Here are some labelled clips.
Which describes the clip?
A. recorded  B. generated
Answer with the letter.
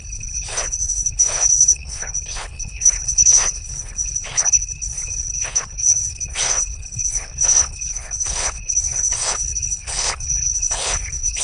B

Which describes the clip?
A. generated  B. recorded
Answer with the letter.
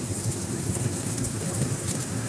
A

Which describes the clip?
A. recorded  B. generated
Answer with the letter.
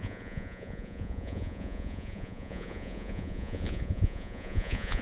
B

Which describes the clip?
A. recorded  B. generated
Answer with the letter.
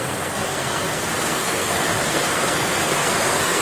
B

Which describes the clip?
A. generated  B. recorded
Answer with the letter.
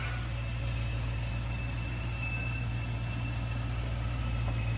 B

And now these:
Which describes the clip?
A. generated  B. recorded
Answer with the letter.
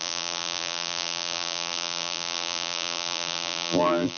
A